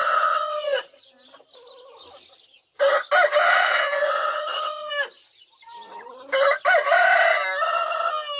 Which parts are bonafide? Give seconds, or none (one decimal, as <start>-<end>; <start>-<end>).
1.0-3.4; 4.9-8.4